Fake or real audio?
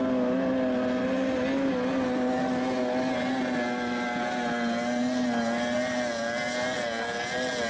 real